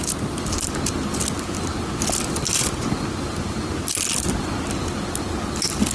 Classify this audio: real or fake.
real